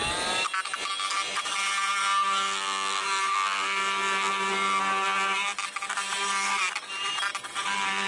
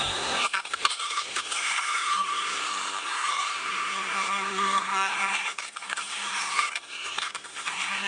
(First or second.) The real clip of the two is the first